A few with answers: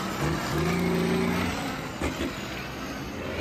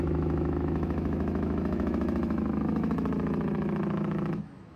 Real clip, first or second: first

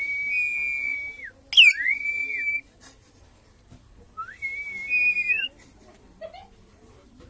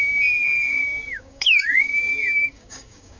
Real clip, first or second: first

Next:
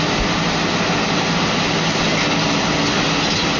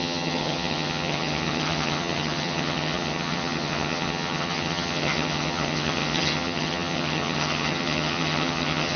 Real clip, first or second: first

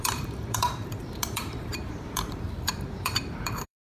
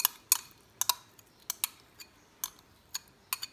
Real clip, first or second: second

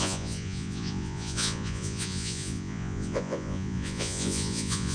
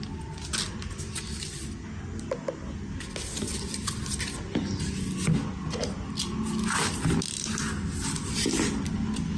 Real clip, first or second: second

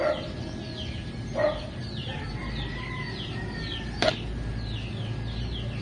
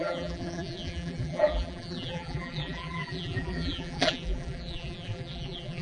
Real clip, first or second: first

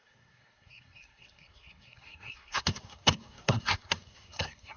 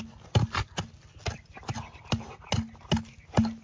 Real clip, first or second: second